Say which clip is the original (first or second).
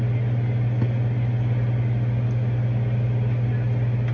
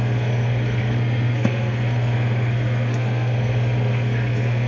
first